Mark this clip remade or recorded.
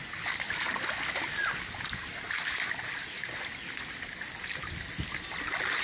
recorded